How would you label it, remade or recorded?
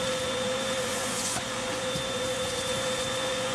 remade